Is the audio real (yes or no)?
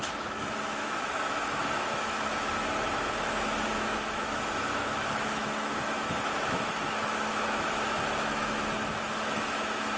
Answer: no